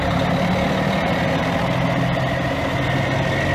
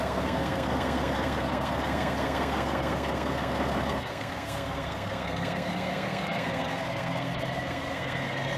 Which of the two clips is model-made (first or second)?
second